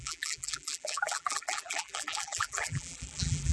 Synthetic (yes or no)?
yes